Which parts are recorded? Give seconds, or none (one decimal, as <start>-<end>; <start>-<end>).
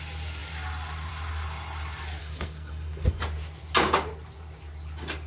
0.0-2.2; 3.2-5.3